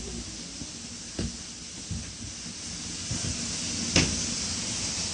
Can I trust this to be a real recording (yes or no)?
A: yes